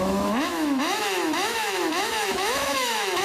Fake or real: fake